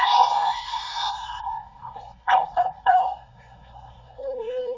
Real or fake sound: fake